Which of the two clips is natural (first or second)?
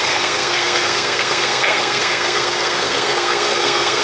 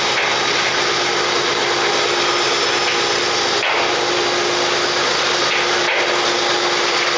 second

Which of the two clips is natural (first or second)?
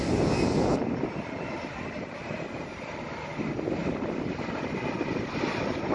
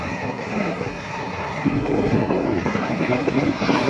first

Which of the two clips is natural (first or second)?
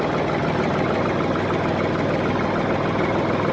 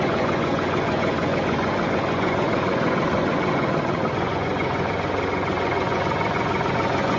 first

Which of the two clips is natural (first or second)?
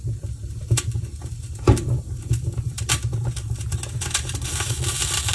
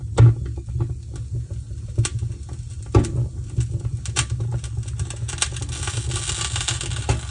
second